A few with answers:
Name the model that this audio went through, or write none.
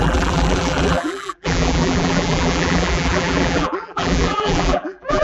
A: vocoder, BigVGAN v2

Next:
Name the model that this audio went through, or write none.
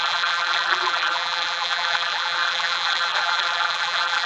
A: vocoder, BigVGAN v2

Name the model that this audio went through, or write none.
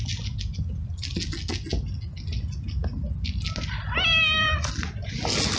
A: none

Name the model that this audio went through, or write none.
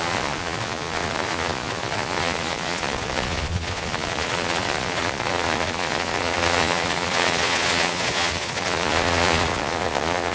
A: vocoder, Vocos